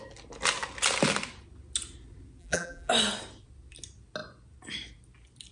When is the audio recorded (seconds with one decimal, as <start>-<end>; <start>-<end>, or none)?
0.0-2.4; 2.9-5.5